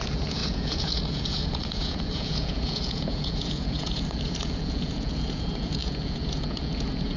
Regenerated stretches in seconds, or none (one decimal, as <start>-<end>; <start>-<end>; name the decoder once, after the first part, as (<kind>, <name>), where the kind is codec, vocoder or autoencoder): 0.0-7.2 (vocoder, Vocos)